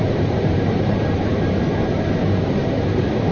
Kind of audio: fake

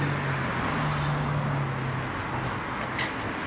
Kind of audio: real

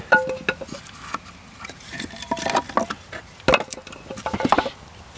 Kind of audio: real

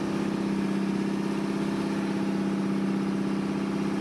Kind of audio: real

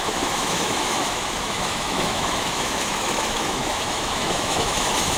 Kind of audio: fake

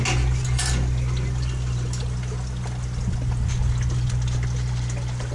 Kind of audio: real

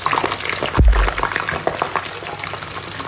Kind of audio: real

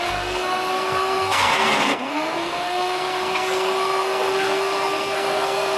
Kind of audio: fake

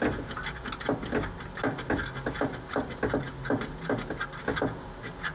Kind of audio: real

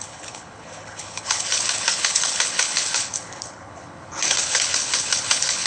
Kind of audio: fake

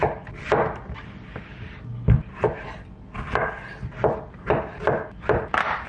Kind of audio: real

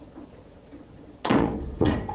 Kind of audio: fake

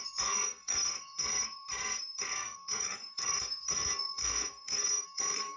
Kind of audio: fake